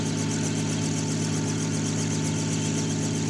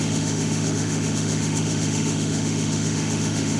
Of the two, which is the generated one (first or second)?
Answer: second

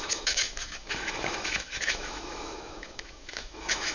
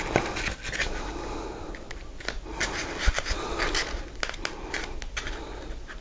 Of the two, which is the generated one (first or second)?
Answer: first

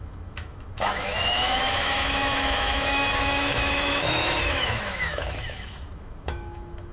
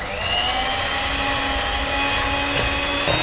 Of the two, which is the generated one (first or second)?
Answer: first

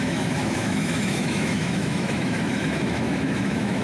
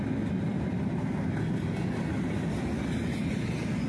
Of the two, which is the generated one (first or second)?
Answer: first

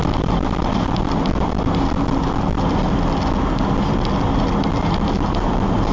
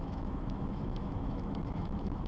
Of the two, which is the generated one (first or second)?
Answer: second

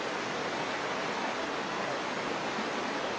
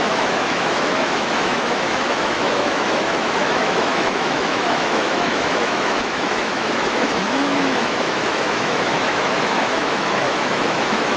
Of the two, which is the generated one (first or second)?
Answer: second